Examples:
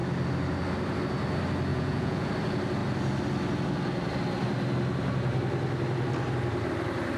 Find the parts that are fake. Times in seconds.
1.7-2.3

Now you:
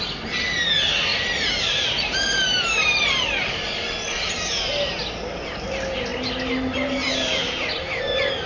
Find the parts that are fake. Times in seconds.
1.1-3.6

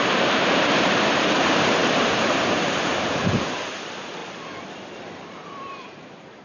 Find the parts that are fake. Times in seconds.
0.0-4.2; 5.0-6.4

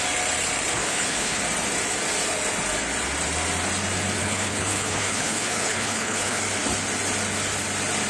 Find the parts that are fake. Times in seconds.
0.7-1.4; 4.2-6.4

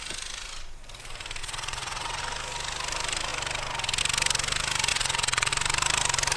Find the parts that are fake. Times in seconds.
1.4-2.2; 4.9-5.5

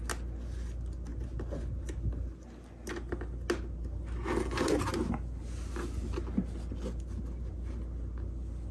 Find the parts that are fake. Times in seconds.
none

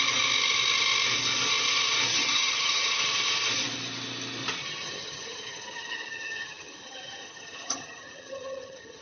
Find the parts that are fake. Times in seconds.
2.1-3.0; 4.6-9.0

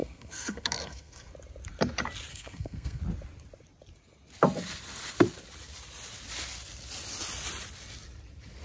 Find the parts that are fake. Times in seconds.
0.0-1.3; 2.3-3.0